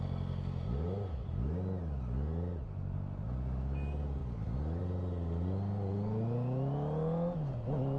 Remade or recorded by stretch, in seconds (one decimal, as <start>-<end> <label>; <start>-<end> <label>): 0.0-8.0 recorded